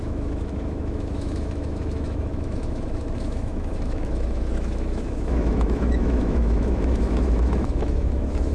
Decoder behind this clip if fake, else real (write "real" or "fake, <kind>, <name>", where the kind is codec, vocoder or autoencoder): fake, autoencoder, DAC-VAE